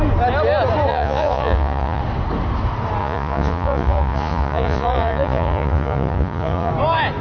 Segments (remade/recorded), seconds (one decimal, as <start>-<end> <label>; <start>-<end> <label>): 0.0-0.9 recorded; 0.9-2.0 remade; 2.0-3.0 recorded; 3.0-6.7 remade; 6.7-7.2 recorded